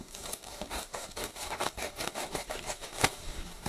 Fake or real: fake